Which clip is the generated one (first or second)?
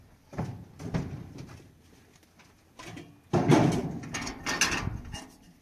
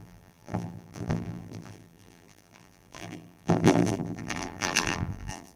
second